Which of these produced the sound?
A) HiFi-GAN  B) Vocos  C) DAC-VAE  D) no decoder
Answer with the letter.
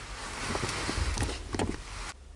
D